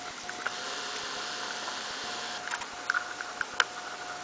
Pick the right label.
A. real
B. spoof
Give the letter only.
A